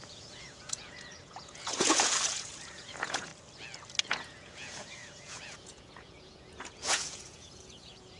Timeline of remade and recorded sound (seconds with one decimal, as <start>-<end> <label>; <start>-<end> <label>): 0.0-3.3 remade; 3.3-4.0 recorded; 4.0-8.2 remade